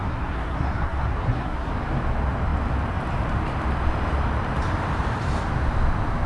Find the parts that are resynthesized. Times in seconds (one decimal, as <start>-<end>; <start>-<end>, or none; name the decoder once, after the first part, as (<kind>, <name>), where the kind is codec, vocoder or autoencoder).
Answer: 0.0-1.7 (codec, SNAC)